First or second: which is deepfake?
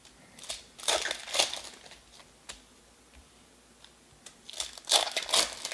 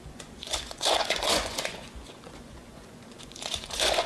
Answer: second